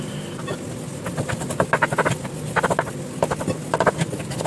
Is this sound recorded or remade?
recorded